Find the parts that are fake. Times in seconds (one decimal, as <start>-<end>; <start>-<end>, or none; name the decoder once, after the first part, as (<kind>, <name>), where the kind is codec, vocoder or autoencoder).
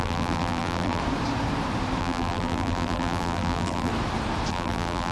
0.0-1.0 (vocoder, BigVGAN v2); 2.0-3.9; 4.5-5.1